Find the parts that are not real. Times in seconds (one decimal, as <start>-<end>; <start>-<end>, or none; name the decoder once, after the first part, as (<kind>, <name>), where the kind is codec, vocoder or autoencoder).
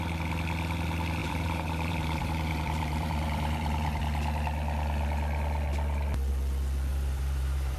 1.2-4.0 (vocoder, BigVGAN v2); 6.9-7.8